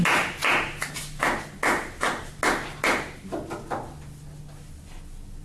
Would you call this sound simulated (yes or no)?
no